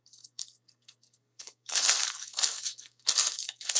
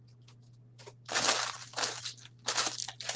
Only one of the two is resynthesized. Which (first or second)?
first